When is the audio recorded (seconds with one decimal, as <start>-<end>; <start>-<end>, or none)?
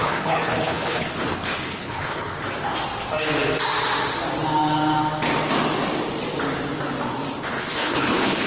2.3-7.4